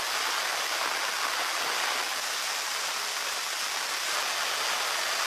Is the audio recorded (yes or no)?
yes